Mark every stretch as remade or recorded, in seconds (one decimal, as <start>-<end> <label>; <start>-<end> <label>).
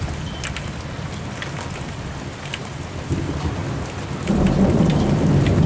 0.0-2.6 recorded; 2.6-3.1 remade; 3.1-5.7 recorded